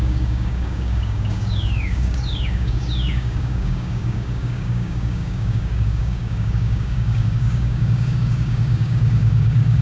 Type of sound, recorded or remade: remade